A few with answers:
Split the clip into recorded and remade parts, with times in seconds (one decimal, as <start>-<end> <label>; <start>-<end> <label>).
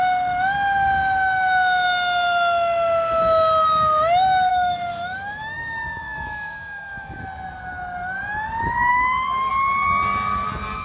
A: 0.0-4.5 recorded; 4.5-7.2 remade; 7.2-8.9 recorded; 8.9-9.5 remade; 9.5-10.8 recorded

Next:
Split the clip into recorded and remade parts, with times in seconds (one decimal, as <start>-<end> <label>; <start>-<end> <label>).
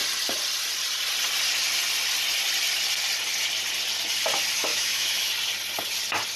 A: 0.0-4.7 recorded; 4.7-5.3 remade; 5.3-6.4 recorded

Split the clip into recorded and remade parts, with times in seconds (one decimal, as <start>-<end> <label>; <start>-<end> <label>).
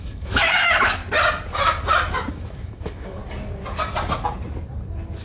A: 0.0-1.0 remade; 1.0-2.3 recorded; 2.3-3.2 remade; 3.2-5.2 recorded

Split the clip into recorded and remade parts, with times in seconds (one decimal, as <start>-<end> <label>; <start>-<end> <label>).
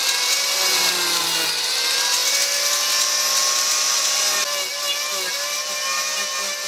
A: 0.0-6.7 recorded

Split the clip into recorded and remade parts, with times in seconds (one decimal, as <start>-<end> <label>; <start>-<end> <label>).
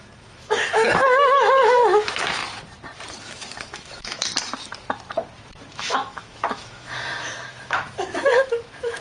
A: 0.0-2.4 remade; 2.4-3.2 recorded; 3.2-4.2 remade; 4.2-5.7 recorded; 5.7-9.0 remade